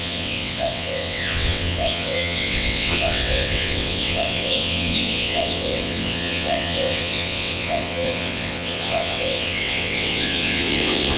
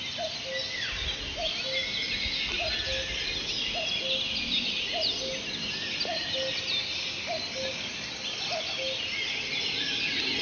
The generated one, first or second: first